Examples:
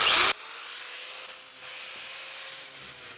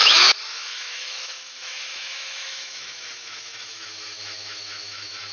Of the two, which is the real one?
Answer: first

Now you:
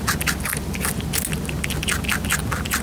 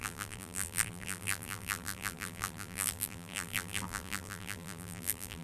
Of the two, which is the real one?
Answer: first